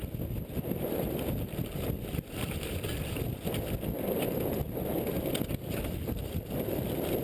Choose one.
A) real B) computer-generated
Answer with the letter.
A